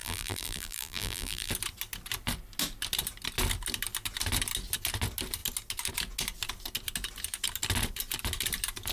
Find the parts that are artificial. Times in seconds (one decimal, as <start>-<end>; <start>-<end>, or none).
0.0-1.5